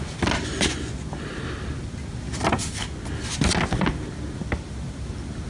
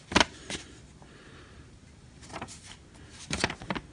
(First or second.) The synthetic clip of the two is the second